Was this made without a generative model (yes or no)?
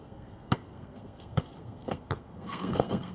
no